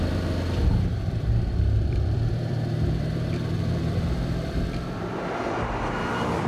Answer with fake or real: fake